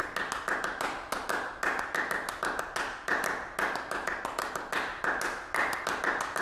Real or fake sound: real